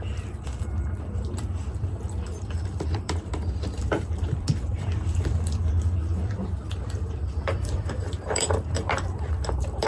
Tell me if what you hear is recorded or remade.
remade